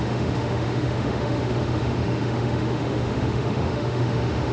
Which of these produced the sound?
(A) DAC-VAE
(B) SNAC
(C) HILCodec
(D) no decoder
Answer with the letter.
A